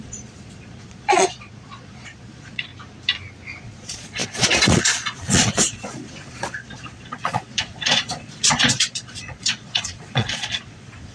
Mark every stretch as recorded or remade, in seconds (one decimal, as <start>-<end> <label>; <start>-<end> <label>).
0.0-2.7 remade; 2.7-3.6 recorded; 3.6-11.1 remade